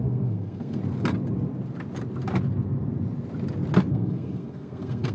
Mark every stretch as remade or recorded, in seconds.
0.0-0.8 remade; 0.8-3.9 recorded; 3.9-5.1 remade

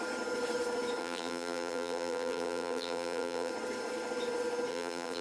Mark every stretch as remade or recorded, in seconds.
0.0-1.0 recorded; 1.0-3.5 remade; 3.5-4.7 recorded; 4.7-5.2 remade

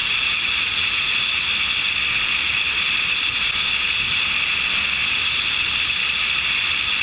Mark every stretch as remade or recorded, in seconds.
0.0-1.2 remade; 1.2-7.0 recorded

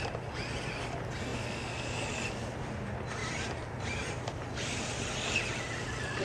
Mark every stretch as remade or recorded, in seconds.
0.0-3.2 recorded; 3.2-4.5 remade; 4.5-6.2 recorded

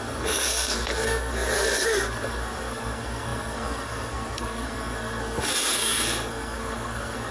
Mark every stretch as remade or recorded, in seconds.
0.0-7.3 remade

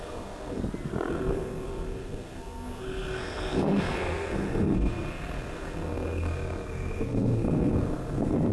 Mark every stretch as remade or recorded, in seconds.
0.0-0.6 remade; 0.6-1.1 recorded; 1.1-8.5 remade

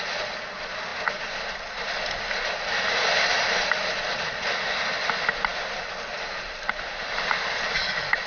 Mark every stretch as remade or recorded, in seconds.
0.0-8.3 recorded